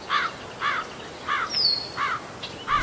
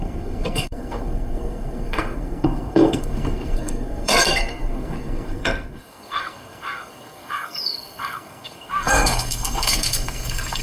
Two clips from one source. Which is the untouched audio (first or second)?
first